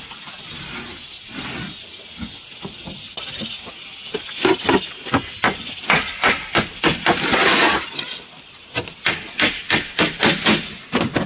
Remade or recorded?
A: recorded